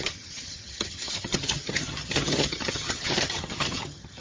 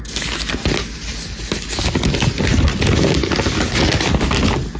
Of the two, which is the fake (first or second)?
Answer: first